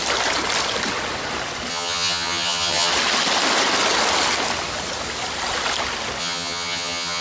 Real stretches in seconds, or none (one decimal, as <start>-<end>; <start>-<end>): 0.0-1.7; 2.9-6.2